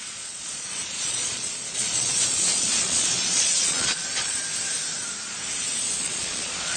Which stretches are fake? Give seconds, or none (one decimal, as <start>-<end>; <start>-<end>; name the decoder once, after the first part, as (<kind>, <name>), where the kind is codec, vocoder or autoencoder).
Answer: 0.0-4.4 (vocoder, Vocos); 6.0-6.8